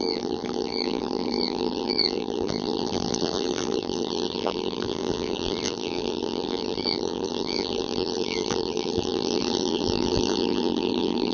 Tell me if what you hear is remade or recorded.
remade